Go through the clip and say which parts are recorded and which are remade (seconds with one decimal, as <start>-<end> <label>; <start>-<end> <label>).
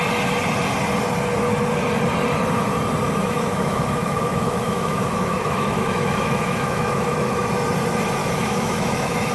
0.0-3.2 recorded; 3.2-7.4 remade; 7.4-8.2 recorded; 8.2-9.3 remade